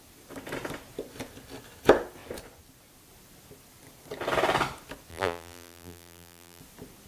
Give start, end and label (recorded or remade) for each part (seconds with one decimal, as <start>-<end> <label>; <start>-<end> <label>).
0.0-5.1 recorded; 5.1-6.6 remade; 6.6-7.1 recorded